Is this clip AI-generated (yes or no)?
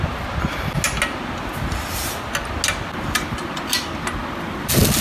no